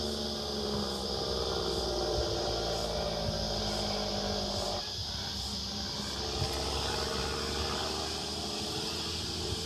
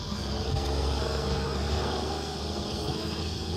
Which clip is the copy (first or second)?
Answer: second